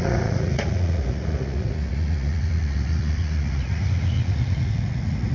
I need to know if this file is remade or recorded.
remade